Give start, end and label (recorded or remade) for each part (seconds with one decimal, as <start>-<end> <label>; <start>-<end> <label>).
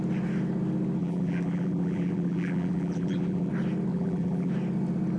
0.0-1.0 recorded; 1.0-3.5 remade; 3.5-3.9 recorded; 3.9-4.5 remade; 4.5-5.2 recorded